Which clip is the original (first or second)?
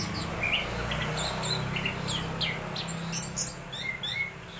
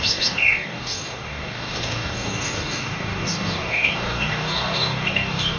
first